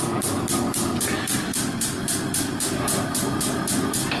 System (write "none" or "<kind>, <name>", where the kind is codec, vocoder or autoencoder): none